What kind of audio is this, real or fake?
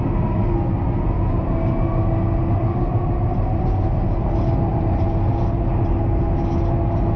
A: real